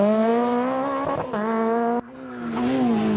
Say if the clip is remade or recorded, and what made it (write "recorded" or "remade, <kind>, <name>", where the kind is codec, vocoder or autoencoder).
recorded